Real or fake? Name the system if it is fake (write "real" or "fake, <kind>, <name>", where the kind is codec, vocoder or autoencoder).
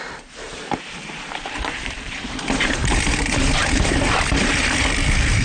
fake, vocoder, BigVGAN v2